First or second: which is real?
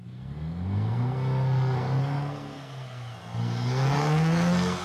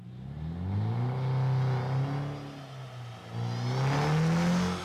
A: second